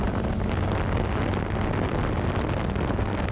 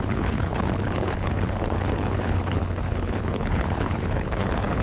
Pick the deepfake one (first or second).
second